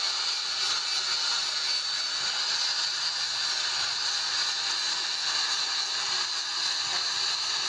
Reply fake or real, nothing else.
real